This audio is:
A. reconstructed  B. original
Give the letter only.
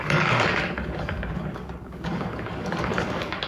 A